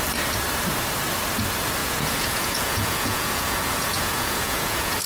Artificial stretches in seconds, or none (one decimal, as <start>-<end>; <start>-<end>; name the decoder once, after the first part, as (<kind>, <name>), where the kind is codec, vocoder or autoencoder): 1.8-5.1 (vocoder, Vocos)